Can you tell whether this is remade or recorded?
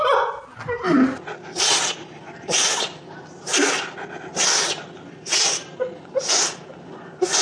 recorded